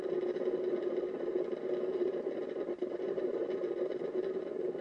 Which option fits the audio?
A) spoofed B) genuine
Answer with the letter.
A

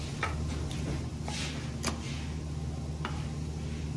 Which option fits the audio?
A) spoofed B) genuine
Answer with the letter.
B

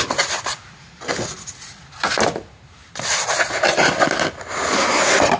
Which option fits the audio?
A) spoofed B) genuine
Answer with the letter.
B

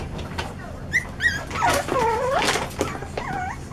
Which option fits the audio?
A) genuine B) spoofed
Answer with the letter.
A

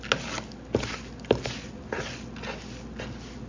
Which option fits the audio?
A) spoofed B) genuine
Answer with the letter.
B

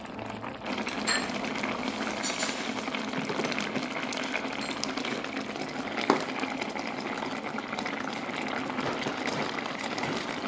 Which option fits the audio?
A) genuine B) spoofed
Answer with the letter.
A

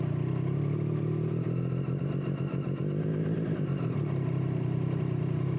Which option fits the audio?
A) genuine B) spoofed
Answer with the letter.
A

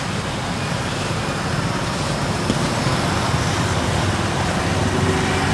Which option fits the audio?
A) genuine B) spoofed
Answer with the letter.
A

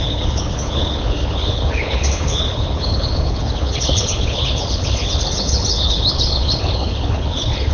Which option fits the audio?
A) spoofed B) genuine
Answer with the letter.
A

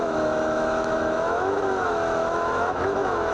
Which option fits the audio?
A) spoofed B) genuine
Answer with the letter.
A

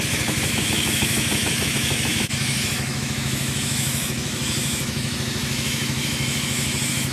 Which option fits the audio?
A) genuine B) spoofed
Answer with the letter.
B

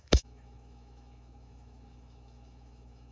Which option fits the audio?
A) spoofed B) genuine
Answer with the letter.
A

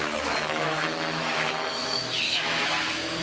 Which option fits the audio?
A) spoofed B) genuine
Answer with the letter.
A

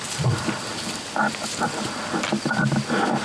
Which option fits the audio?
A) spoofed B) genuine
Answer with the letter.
B